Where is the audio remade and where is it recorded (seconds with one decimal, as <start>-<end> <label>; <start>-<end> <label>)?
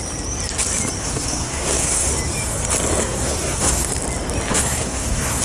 0.0-1.0 recorded; 1.0-2.1 remade; 2.1-3.0 recorded; 3.0-3.9 remade; 3.9-4.5 recorded; 4.5-5.4 remade